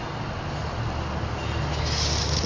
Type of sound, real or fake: real